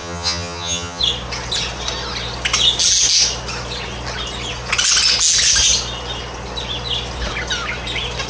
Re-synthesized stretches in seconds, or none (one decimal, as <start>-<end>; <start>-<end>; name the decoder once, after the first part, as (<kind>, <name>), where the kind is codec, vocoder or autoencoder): 0.0-1.0 (vocoder, HiFi-GAN)